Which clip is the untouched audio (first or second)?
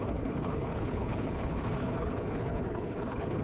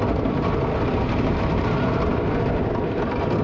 second